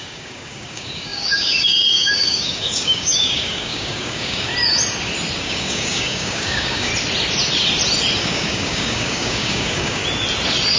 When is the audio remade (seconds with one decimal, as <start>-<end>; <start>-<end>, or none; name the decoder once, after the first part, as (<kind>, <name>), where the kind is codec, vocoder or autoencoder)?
0.0-4.5 (codec, DAC); 5.4-6.9; 8.2-10.0